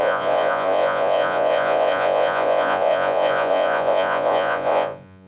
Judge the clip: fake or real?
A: fake